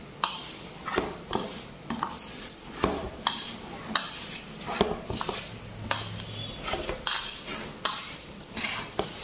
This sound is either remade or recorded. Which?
recorded